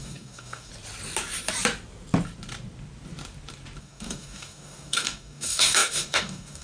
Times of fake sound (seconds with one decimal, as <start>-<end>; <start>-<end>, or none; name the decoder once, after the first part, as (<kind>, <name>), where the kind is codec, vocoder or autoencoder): 0.0-0.7 (codec, DAC); 3.8-6.6